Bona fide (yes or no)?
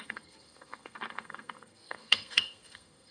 no